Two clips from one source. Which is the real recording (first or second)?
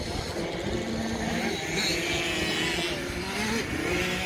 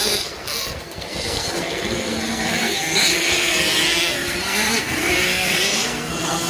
first